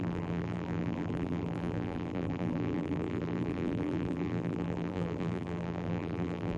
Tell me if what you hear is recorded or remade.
remade